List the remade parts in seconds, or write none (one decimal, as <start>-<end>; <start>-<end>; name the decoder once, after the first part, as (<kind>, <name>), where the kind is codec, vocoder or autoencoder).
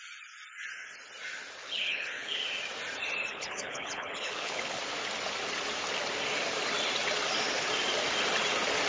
1.6-2.4 (codec, HILCodec); 3.3-4.8